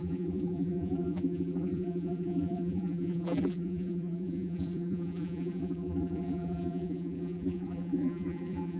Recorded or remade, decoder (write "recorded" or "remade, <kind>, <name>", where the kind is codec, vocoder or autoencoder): remade, vocoder, BigVGAN v2